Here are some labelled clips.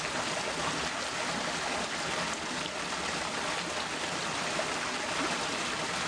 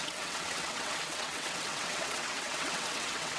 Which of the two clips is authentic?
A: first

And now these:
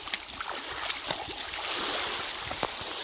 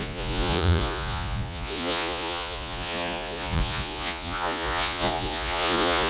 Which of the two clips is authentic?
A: first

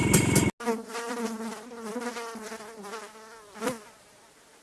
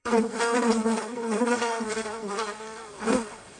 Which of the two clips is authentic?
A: first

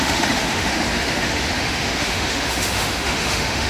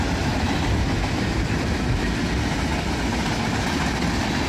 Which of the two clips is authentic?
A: second